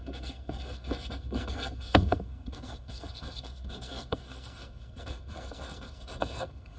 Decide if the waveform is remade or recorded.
remade